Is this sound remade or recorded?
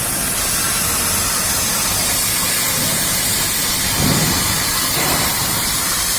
recorded